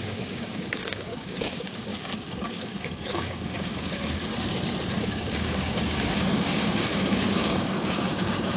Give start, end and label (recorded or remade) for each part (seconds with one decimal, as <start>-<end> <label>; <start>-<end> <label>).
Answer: 0.0-4.3 remade; 4.3-5.0 recorded; 5.0-8.6 remade